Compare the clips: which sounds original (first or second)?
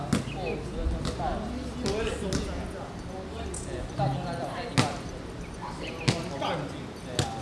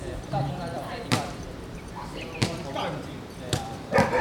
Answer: first